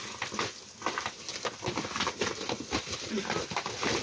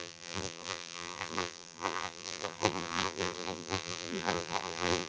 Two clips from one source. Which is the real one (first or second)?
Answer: first